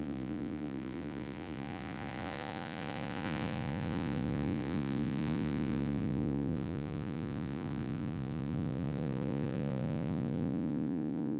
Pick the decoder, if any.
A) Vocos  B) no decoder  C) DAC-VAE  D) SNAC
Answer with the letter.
A